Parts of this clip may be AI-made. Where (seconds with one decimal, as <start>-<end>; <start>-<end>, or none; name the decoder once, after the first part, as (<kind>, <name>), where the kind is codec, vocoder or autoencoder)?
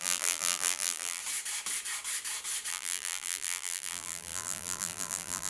0.0-1.2 (vocoder, BigVGAN v2); 2.7-5.5